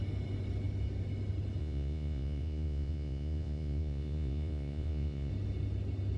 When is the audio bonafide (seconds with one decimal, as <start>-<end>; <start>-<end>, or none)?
0.0-1.6; 5.3-6.2